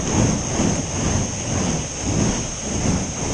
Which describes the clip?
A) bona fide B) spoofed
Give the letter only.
A